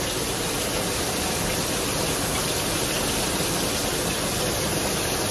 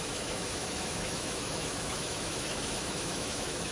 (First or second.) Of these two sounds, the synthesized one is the second